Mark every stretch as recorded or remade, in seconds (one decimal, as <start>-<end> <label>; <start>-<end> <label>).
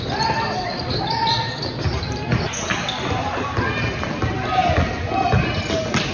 0.0-6.1 recorded